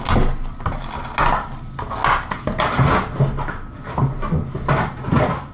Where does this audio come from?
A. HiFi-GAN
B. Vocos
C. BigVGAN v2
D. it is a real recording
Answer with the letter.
D